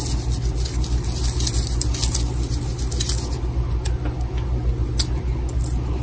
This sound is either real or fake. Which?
real